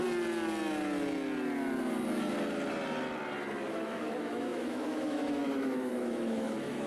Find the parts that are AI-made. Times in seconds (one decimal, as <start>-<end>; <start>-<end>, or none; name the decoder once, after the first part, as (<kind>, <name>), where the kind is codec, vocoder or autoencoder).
3.7-6.9 (autoencoder, DAC-VAE)